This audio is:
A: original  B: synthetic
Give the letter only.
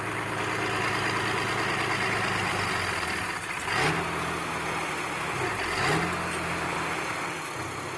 A